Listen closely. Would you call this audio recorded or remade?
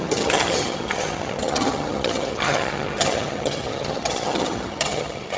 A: remade